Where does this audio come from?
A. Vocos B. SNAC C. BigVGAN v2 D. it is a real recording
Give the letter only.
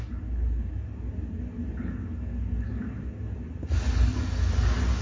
D